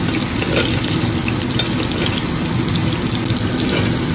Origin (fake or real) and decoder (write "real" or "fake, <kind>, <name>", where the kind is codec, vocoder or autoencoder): real